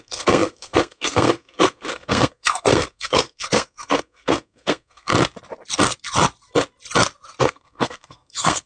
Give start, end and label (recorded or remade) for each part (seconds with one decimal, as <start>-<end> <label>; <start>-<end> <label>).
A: 0.0-5.1 remade; 5.1-7.4 recorded; 7.4-8.7 remade

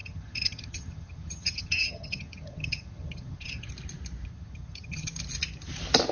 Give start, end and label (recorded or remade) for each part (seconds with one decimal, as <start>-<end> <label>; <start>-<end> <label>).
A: 0.0-3.7 remade; 3.7-4.3 recorded; 4.3-5.1 remade; 5.1-6.1 recorded